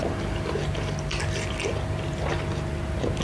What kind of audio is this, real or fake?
real